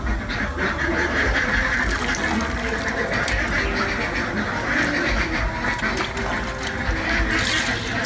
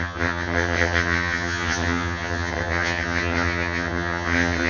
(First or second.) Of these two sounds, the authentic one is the first